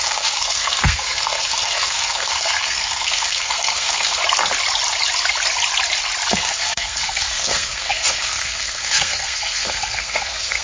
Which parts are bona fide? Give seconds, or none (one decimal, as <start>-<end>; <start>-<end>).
4.2-6.3